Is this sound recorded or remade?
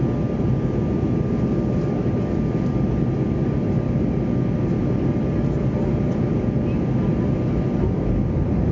recorded